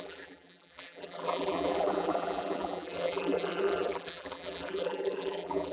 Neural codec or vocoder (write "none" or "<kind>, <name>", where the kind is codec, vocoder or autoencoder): vocoder, BigVGAN v2